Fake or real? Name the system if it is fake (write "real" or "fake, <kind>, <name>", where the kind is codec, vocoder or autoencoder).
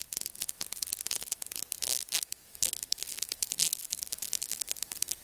fake, codec, SNAC